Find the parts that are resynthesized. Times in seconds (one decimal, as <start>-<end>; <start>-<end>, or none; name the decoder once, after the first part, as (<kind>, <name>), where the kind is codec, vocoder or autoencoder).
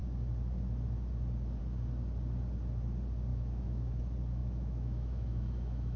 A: 3.3-4.0 (autoencoder, DAC-VAE); 4.4-6.0